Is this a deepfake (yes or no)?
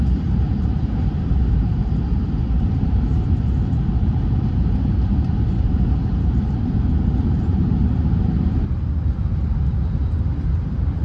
yes